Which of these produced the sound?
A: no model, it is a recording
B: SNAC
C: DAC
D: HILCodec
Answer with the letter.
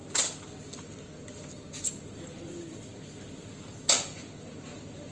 A